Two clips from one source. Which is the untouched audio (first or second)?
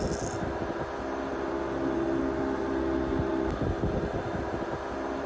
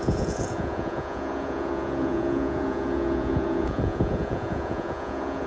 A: first